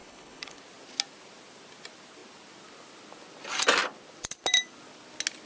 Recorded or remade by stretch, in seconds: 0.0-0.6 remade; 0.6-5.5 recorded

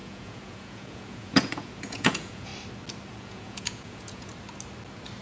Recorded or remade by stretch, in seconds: 0.0-2.5 remade; 2.5-3.1 recorded; 3.1-4.3 remade; 4.3-5.2 recorded

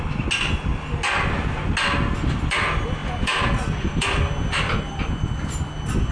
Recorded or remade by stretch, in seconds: 0.0-6.1 recorded

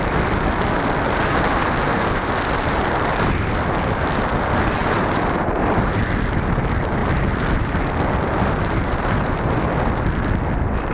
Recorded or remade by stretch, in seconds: 0.0-4.8 recorded; 4.8-6.0 remade; 6.0-10.9 recorded

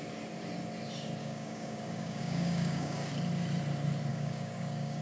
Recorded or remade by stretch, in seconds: 0.0-1.2 recorded; 1.2-3.1 remade; 3.1-4.1 recorded; 4.1-5.0 remade

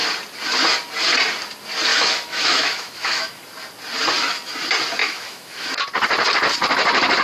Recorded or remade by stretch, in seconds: 0.0-1.9 recorded; 1.9-3.4 remade; 3.4-5.0 recorded; 5.0-5.7 remade; 5.7-7.2 recorded